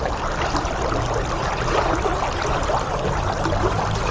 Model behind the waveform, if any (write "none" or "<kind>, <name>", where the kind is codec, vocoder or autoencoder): none